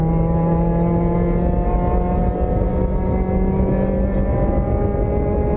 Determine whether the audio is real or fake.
real